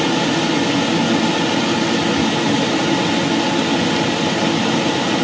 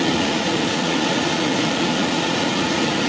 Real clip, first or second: first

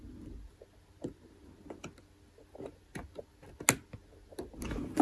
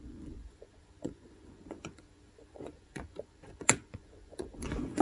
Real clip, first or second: first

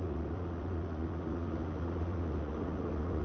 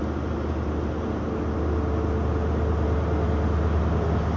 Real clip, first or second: second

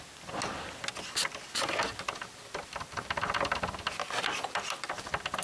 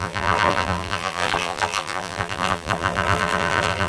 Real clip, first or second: first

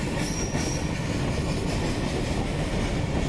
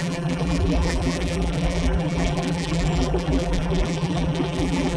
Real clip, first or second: first